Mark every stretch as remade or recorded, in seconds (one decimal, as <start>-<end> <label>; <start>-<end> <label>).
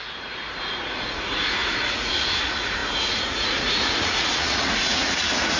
0.0-5.6 remade